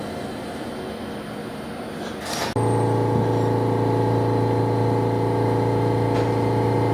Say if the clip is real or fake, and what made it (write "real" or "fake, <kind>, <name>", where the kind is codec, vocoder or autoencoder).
real